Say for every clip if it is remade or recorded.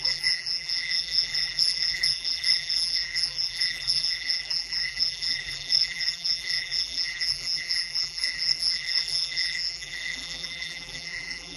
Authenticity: remade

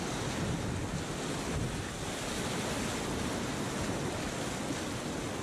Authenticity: recorded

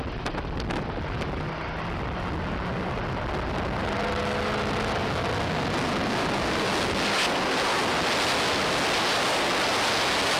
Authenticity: recorded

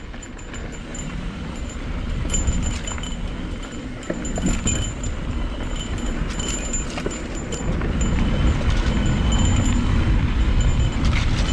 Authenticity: recorded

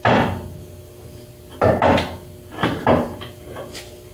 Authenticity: recorded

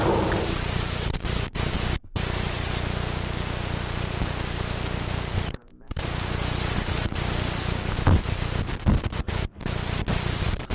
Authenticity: remade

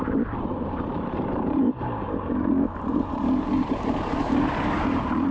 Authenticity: remade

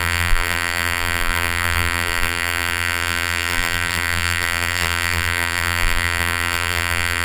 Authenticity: remade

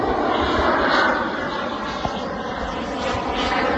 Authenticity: recorded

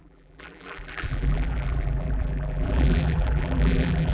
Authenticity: remade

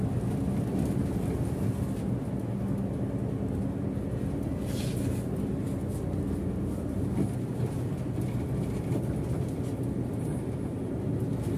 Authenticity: recorded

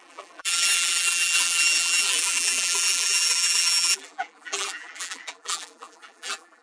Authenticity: remade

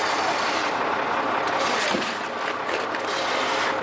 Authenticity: recorded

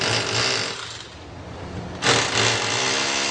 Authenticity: recorded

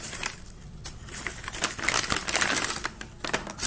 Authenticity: recorded